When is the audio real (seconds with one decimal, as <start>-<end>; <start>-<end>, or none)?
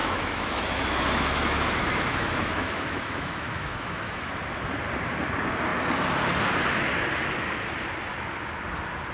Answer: 4.3-9.1